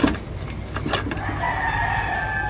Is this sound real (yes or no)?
yes